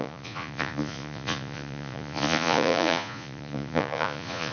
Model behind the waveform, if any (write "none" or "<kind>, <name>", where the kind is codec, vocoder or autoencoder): vocoder, Vocos